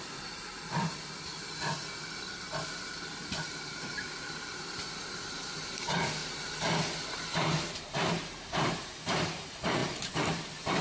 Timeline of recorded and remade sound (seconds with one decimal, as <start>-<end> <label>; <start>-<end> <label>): 0.0-1.3 remade; 1.3-3.0 recorded; 3.0-6.2 remade; 6.2-7.1 recorded; 7.1-10.8 remade